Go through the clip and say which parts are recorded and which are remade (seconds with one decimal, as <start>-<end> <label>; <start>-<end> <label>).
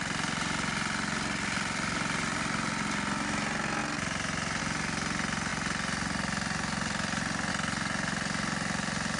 0.0-9.2 recorded